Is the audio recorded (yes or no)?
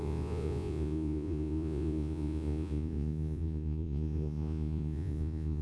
no